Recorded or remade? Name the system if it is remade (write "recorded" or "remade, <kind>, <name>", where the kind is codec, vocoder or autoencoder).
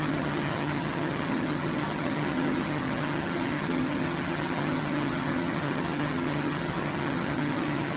remade, vocoder, HiFi-GAN